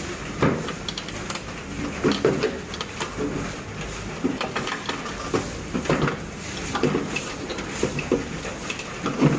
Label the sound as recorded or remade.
recorded